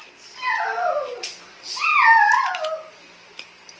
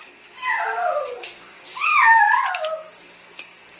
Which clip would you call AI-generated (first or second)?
second